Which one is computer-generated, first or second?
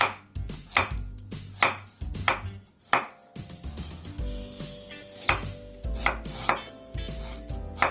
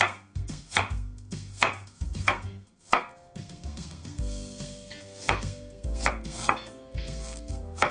second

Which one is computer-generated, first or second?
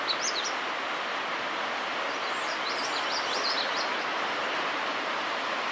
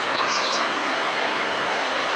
second